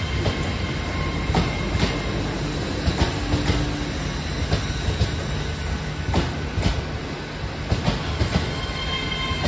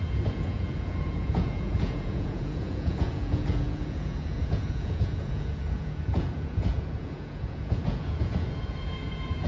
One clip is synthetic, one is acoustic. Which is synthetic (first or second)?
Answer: second